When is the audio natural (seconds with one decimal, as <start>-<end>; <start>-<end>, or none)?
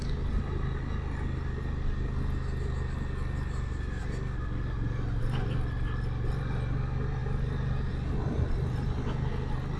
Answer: 0.0-9.8